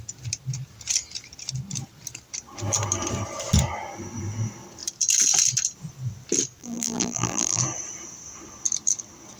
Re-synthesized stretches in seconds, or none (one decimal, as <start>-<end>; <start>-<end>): 6.6-7.6